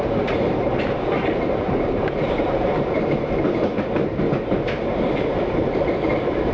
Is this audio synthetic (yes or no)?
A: yes